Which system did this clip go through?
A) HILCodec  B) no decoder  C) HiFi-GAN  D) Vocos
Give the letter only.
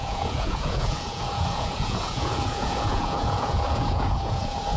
D